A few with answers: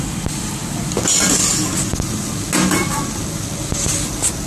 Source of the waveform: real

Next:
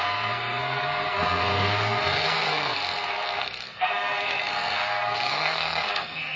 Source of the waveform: fake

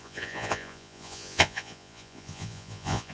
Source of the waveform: fake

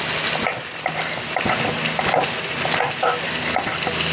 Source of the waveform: real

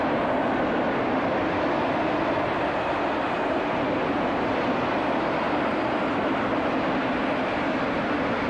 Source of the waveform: real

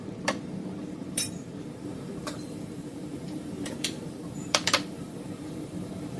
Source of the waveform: fake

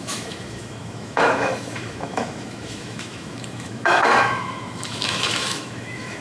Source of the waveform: fake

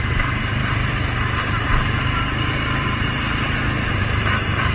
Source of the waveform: fake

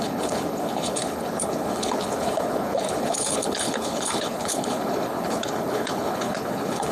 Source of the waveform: fake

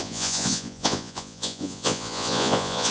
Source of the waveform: fake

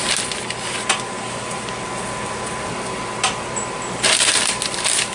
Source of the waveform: real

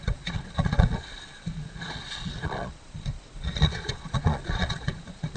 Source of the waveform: fake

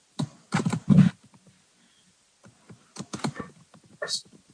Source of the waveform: real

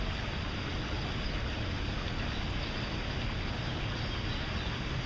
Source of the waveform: real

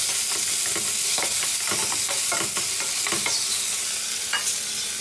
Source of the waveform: real